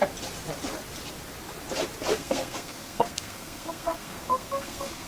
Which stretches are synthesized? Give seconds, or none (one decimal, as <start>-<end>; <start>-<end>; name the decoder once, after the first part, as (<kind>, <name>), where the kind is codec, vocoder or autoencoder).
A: 2.1-5.1 (codec, SNAC)